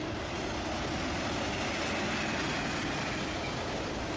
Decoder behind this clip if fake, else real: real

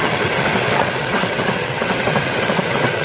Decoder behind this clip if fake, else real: fake, vocoder, WaveNeXt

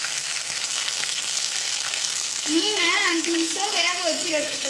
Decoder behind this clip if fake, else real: fake, codec, SNAC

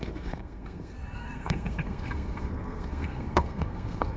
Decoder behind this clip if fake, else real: fake, codec, SNAC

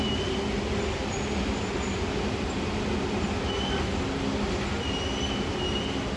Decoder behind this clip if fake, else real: real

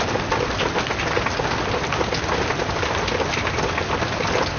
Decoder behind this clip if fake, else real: real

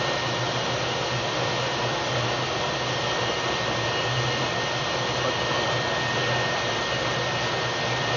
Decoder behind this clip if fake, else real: real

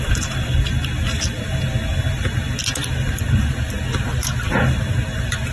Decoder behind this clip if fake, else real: real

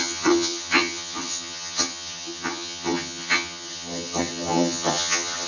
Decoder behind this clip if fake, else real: fake, vocoder, HiFi-GAN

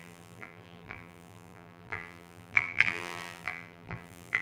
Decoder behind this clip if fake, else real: fake, vocoder, BigVGAN v2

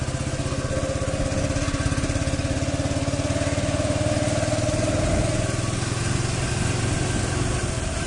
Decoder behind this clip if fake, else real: real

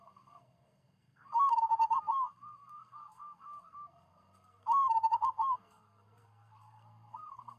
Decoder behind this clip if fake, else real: fake, codec, SNAC